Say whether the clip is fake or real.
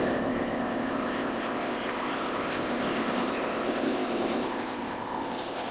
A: fake